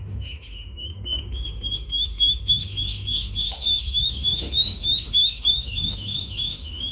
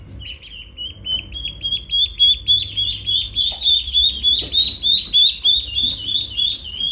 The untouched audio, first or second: second